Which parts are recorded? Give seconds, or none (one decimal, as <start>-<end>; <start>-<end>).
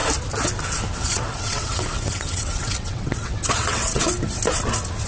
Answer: 0.0-1.0; 4.1-5.1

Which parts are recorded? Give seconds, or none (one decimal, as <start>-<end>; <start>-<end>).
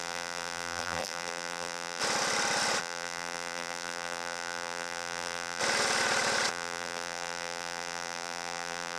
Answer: 2.0-2.8; 5.6-6.5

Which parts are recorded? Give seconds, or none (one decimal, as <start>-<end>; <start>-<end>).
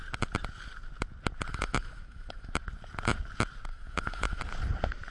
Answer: 0.0-1.5; 2.5-3.7; 4.4-5.1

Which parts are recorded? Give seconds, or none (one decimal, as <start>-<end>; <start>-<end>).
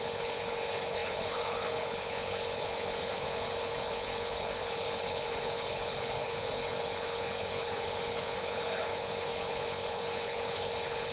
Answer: none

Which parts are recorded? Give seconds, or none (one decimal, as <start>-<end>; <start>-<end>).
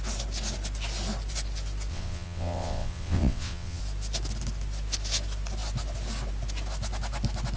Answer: 0.0-1.9; 3.8-7.6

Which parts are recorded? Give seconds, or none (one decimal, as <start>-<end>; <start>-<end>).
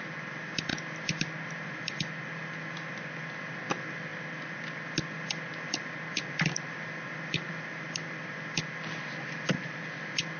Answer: 0.0-10.4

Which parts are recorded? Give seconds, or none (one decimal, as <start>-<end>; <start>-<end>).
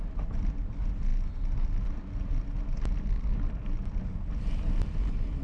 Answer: 0.0-5.4